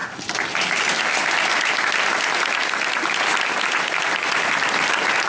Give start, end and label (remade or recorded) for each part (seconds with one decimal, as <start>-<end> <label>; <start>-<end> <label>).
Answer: 0.0-5.3 recorded